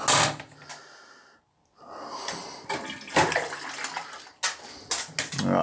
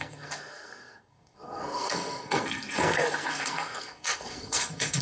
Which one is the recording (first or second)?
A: first